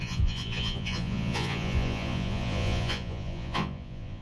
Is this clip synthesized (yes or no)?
yes